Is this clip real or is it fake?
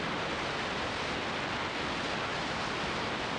real